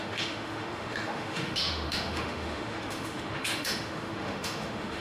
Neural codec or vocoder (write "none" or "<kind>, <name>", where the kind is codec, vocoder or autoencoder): autoencoder, DAC-VAE